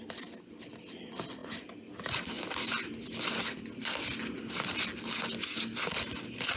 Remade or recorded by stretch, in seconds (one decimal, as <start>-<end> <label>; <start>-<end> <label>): 0.0-6.6 recorded